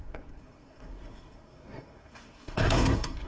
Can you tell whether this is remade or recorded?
remade